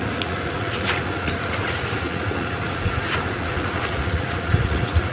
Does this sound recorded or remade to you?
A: remade